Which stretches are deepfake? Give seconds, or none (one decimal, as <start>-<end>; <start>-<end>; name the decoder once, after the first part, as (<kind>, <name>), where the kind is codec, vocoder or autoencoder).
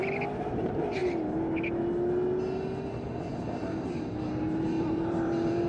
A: 0.0-1.0 (vocoder, BigVGAN v2); 4.4-5.7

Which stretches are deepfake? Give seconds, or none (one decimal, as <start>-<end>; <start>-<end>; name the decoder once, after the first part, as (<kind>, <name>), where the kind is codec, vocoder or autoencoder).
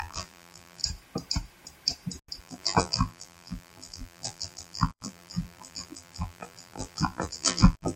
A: 0.0-0.8 (vocoder, BigVGAN v2); 2.4-8.0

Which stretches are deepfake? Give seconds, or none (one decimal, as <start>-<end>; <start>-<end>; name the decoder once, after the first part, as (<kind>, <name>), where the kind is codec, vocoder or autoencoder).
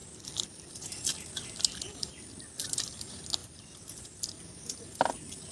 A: 0.0-3.0 (vocoder, BigVGAN v2)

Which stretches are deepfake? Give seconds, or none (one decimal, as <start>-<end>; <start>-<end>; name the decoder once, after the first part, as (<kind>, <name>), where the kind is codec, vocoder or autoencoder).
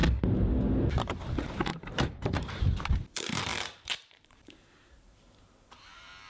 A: 0.8-6.3 (vocoder, BigVGAN v2)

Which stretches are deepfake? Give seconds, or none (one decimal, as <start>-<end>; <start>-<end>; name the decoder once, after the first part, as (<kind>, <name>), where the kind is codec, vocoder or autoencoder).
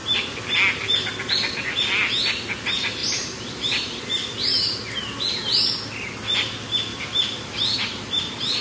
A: 3.0-4.0 (vocoder, BigVGAN v2); 6.9-8.2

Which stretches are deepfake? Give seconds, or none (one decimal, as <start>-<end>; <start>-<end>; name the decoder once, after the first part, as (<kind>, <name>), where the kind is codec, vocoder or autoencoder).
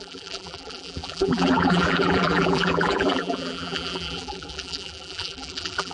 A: 0.0-5.9 (vocoder, BigVGAN v2)